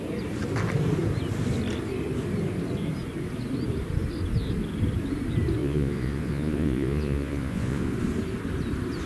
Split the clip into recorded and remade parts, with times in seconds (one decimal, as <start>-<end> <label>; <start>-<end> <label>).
0.0-5.6 recorded; 5.6-7.9 remade; 7.9-9.1 recorded